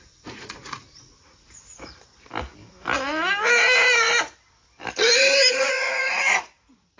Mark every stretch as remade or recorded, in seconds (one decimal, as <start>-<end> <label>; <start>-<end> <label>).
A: 0.0-2.1 remade; 2.1-5.5 recorded; 5.5-7.0 remade